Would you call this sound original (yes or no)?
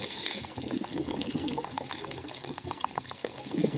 no